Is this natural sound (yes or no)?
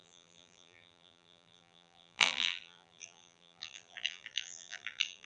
no